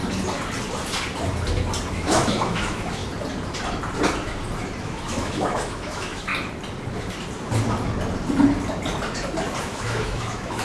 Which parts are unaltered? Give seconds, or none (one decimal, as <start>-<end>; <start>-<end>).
0.0-1.9; 3.0-4.8; 6.3-9.6